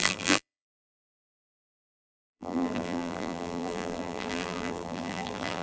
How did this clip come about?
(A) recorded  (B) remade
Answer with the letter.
B